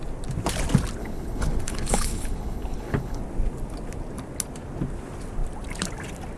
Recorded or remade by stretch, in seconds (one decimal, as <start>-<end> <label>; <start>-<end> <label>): 0.0-1.0 recorded; 1.0-3.2 remade; 3.2-6.4 recorded

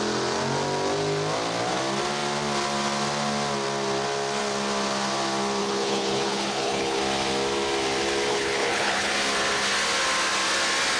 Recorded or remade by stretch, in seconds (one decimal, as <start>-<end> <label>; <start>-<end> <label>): 0.0-5.6 recorded; 5.6-7.0 remade; 7.0-8.3 recorded; 8.3-9.1 remade; 9.1-11.0 recorded

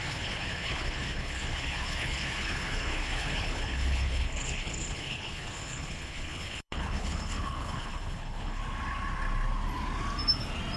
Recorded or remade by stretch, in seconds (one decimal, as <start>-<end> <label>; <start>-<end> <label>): 0.0-8.6 remade; 8.6-10.8 recorded

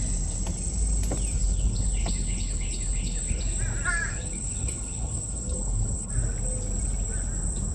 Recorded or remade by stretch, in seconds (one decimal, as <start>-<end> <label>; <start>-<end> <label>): 0.0-1.4 recorded; 1.4-3.4 remade; 3.4-4.1 recorded; 4.1-6.1 remade; 6.1-7.7 recorded

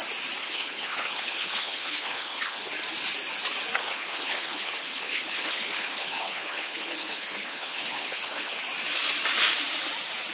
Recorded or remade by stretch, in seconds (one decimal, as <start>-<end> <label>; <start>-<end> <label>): 0.0-0.4 recorded; 0.4-2.7 remade; 2.7-3.8 recorded; 3.8-8.6 remade; 8.6-10.3 recorded

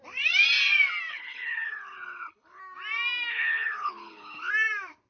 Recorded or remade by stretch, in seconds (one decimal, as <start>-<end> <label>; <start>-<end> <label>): 0.0-1.1 recorded; 1.1-2.6 remade; 2.6-3.3 recorded; 3.3-4.5 remade; 4.5-5.1 recorded

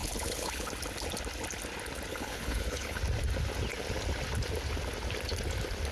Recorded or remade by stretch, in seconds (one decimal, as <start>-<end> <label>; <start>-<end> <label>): 0.0-0.7 remade; 0.7-2.1 recorded; 2.1-3.0 remade; 3.0-5.9 recorded

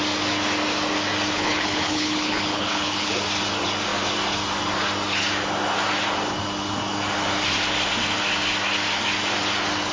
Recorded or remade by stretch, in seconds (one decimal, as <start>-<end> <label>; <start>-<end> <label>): 0.0-1.3 recorded; 1.3-3.1 remade; 3.1-9.9 recorded